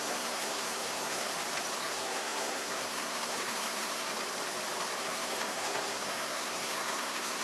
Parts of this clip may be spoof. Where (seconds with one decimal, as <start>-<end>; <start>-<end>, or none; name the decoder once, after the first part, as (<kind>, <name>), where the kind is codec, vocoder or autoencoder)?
0.0-1.3 (codec, SNAC); 1.8-4.1; 5.0-7.4